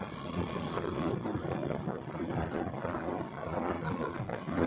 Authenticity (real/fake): fake